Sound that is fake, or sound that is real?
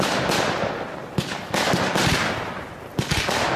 real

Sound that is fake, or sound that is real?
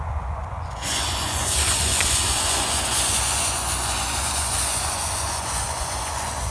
fake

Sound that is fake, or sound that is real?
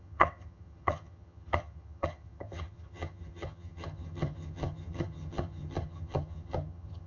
fake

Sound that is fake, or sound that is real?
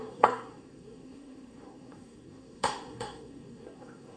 fake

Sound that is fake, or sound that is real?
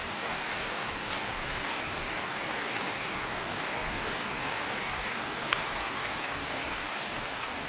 fake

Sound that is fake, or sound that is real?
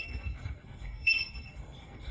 fake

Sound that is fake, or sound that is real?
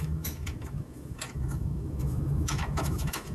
fake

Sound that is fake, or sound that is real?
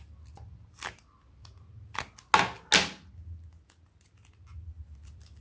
real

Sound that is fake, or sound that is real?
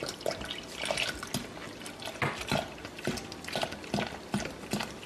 real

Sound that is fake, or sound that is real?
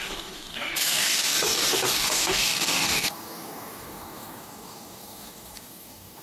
fake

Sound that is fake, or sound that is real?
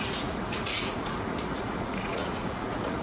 fake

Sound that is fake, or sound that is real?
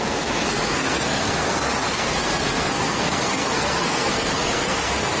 fake